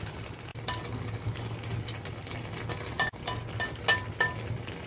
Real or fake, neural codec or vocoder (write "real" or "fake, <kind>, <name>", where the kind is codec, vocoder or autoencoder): real